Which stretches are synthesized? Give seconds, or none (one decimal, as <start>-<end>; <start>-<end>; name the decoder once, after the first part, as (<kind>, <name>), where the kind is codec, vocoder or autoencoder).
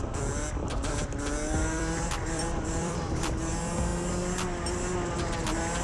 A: 1.6-3.5 (vocoder, BigVGAN v2)